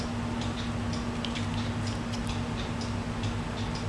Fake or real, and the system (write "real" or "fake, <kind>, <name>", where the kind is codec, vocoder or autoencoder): real